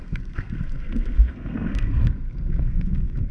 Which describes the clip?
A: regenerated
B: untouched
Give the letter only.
A